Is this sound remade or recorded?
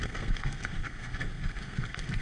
remade